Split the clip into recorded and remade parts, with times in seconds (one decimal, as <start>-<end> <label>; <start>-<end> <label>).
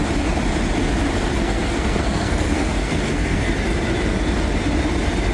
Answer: 0.0-1.4 recorded; 1.4-3.5 remade; 3.5-5.3 recorded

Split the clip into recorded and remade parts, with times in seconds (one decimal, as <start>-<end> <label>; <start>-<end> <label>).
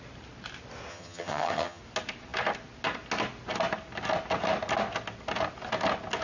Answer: 0.0-0.9 recorded; 0.9-1.8 remade; 1.8-6.2 recorded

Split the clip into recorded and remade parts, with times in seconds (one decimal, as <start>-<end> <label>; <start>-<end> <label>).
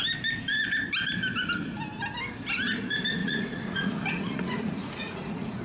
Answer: 0.0-3.2 recorded; 3.2-5.6 remade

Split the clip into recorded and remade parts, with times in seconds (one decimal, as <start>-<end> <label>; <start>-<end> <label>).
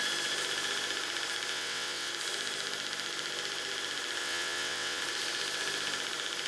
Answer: 0.0-1.5 recorded; 1.5-2.1 remade; 2.1-4.2 recorded; 4.2-5.0 remade; 5.0-6.5 recorded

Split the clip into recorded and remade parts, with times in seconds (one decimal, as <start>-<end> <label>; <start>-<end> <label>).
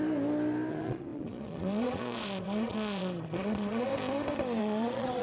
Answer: 0.0-0.7 recorded; 0.7-3.9 remade; 3.9-4.6 recorded; 4.6-5.2 remade